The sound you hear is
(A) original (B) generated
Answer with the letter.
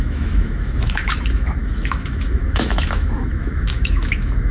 B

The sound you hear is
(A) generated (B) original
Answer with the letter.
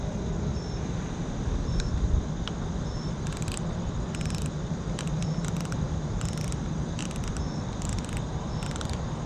B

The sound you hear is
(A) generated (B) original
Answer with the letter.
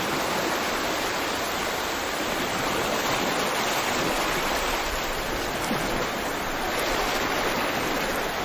B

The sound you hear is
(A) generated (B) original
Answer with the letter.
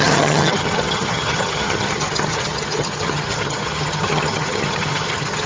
A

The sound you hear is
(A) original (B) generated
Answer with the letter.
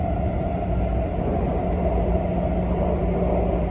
A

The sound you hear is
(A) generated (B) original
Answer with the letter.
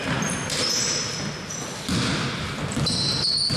B